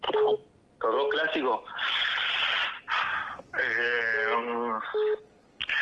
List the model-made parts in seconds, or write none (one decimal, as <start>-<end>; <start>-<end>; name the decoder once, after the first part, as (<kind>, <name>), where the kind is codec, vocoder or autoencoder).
none